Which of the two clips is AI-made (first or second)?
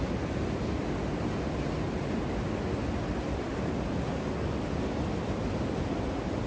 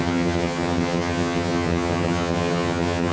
second